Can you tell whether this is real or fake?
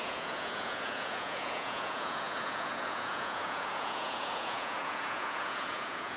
fake